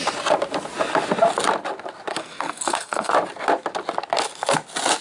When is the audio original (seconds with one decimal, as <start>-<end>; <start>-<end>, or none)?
0.0-2.1; 3.1-5.0